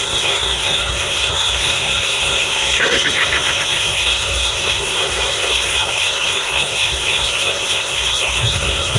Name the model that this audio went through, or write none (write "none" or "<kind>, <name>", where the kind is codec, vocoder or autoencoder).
codec, SNAC